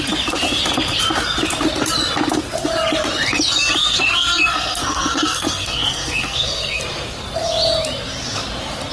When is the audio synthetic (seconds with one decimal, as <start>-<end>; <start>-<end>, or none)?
3.8-6.8